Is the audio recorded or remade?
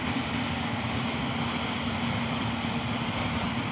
remade